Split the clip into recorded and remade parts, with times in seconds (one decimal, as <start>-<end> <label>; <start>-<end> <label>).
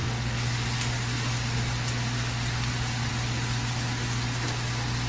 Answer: 0.0-5.1 recorded